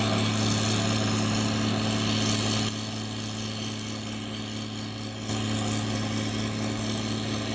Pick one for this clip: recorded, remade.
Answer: recorded